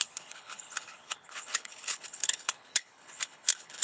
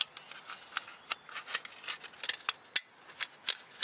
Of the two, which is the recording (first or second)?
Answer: second